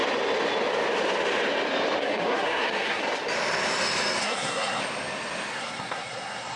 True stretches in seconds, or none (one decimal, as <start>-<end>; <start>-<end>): 0.0-2.0; 3.0-4.2; 4.8-5.5